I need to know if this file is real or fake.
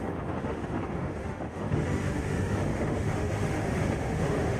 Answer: fake